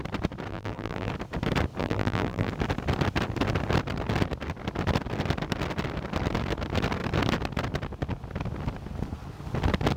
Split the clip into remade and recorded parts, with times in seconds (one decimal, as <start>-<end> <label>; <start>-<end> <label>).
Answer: 0.0-0.5 recorded; 0.5-1.1 remade; 1.1-1.8 recorded; 1.8-2.5 remade; 2.5-10.0 recorded